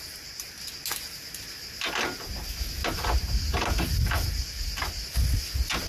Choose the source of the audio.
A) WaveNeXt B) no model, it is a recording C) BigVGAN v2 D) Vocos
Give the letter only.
B